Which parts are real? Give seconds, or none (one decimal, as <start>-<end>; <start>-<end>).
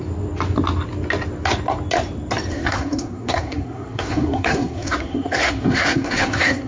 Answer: 0.0-2.5